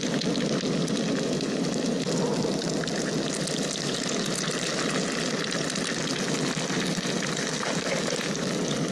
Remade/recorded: recorded